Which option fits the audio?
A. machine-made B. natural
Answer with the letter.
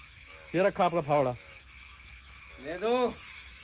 A